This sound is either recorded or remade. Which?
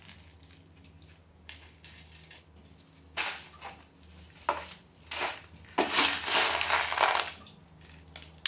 recorded